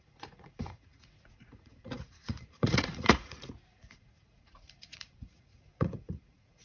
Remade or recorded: remade